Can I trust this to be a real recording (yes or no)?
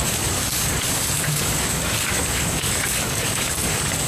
no